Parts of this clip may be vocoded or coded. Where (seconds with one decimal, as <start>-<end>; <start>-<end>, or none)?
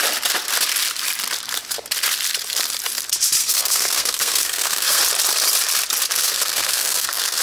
3.4-5.0; 6.1-7.4